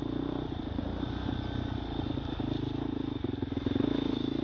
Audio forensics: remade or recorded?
recorded